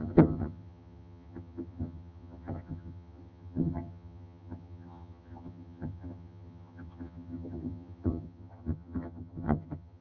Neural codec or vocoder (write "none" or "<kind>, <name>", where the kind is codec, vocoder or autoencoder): vocoder, HiFi-GAN